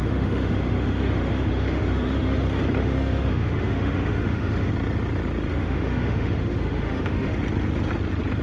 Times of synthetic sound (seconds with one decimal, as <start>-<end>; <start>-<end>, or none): 0.0-2.4; 2.8-4.7; 5.5-7.4